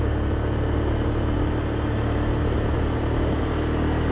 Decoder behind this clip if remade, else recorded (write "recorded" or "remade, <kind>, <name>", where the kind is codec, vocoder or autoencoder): recorded